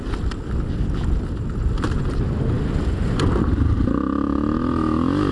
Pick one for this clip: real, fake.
real